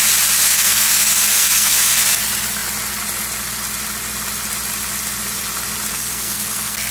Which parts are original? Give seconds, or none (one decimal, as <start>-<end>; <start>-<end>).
0.0-0.4; 2.2-5.9

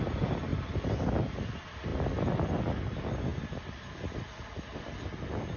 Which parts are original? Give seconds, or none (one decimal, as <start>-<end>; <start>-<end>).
0.0-5.6

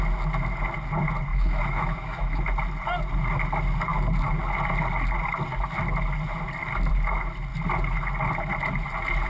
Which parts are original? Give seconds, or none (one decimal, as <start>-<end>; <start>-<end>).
0.0-1.3; 2.4-9.3

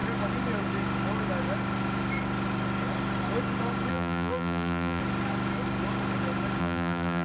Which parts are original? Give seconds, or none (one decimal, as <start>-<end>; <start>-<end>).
0.0-3.9; 5.0-6.6